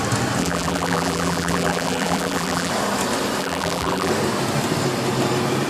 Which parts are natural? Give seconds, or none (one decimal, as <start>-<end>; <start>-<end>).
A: 0.0-0.4; 2.7-3.4; 4.1-5.7